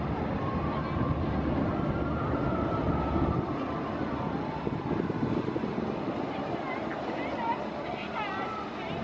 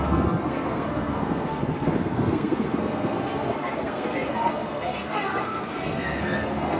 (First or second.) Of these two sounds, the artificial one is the second